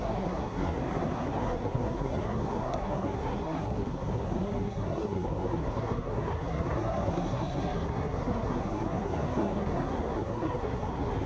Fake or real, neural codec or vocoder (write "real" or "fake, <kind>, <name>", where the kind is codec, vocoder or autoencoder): fake, codec, SNAC